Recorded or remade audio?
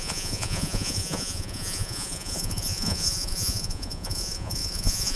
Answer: remade